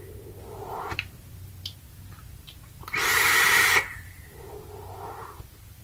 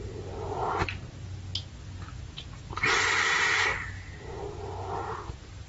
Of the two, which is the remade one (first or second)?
first